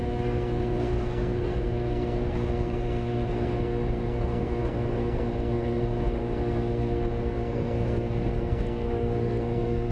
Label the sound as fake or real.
fake